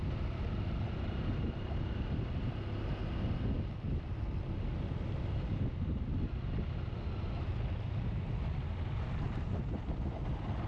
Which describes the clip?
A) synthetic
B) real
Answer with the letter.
B